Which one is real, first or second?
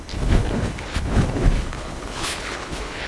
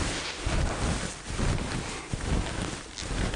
second